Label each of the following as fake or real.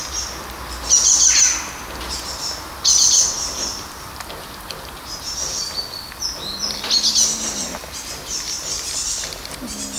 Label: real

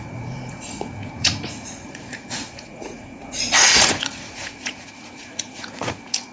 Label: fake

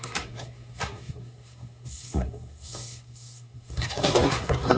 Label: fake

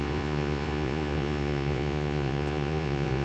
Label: fake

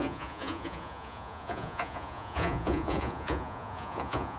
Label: fake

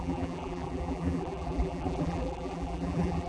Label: fake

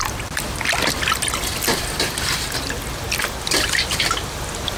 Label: real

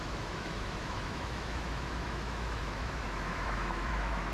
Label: fake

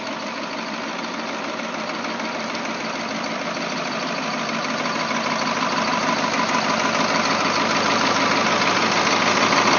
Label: fake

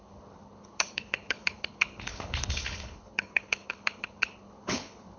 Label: fake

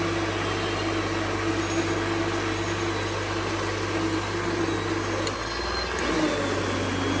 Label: real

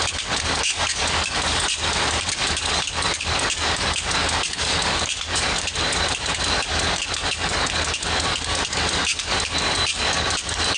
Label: fake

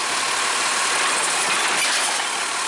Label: real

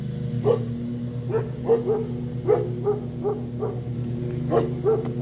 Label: real